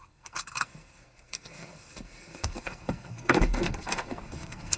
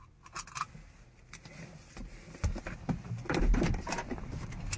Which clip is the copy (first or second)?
first